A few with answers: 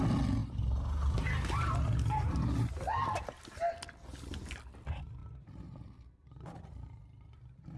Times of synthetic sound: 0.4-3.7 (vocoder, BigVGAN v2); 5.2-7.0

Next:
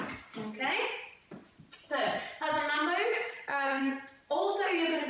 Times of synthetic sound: 3.1-3.9 (vocoder, HiFi-GAN)

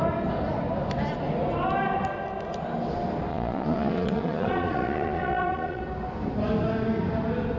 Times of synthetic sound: 3.3-5.8 (vocoder, Vocos)